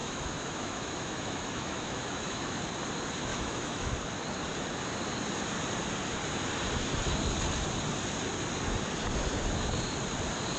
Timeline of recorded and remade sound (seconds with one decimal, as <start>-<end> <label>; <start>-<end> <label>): 0.0-2.6 remade; 2.6-3.3 recorded; 3.3-3.9 remade; 3.9-10.6 recorded